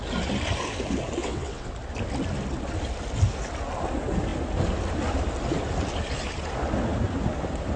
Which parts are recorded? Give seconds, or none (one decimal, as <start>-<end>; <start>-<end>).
0.0-1.2; 1.7-7.8

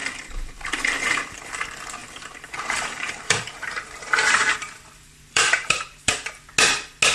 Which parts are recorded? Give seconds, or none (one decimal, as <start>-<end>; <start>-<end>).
1.5-2.0; 6.3-7.1

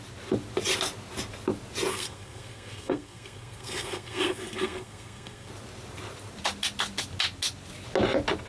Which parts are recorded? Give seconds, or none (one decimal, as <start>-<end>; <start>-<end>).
0.0-1.9; 5.5-8.5